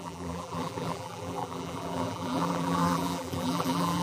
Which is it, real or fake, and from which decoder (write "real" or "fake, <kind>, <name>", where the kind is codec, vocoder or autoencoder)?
fake, vocoder, BigVGAN v2